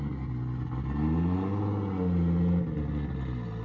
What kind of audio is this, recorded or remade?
recorded